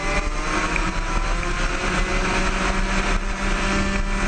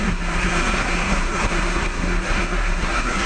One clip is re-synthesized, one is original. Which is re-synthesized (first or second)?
second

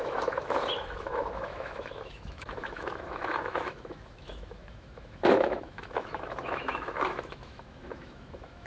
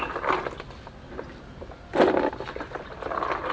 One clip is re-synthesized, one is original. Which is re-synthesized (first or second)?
first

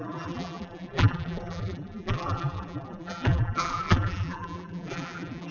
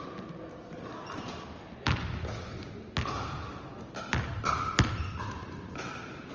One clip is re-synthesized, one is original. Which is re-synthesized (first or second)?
first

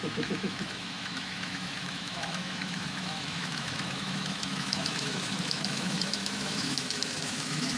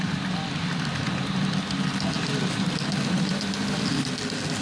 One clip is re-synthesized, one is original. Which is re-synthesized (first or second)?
first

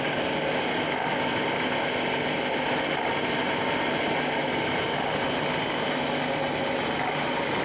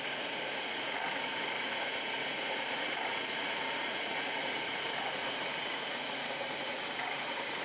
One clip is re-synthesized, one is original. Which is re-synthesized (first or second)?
second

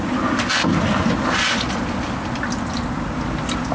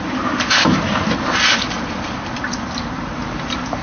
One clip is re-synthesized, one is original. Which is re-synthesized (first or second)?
second